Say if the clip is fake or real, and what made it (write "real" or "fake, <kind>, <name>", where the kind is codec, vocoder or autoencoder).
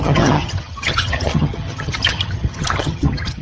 fake, vocoder, HiFi-GAN